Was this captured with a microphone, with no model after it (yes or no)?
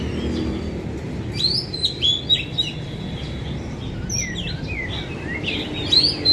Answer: yes